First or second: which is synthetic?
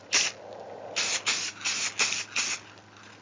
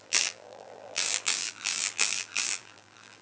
second